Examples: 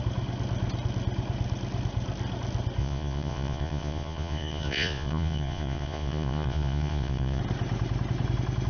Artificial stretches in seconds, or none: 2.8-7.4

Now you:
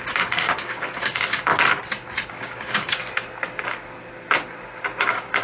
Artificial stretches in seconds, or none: 0.0-1.5; 2.3-3.0; 5.0-5.4

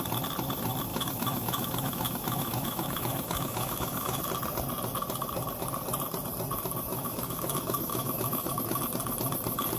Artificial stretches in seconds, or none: 0.9-4.2; 6.9-8.8

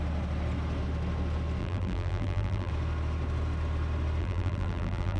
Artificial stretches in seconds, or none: 1.6-2.7; 4.2-5.2

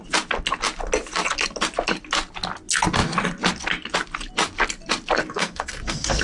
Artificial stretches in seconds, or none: 5.2-6.2

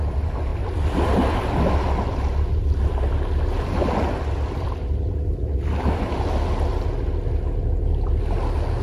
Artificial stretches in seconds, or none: none

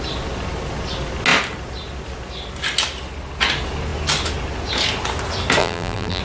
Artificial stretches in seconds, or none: 5.6-6.2